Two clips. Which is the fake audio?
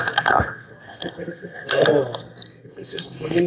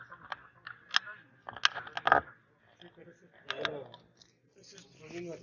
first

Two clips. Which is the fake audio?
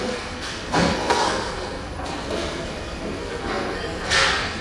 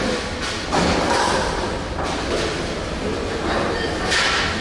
first